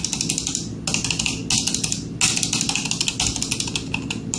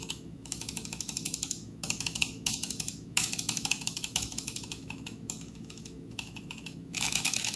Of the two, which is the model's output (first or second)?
second